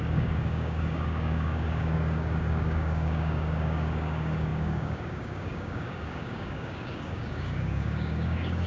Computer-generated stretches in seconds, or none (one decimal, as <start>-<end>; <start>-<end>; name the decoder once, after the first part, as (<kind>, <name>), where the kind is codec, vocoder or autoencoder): 0.0-8.7 (codec, DAC)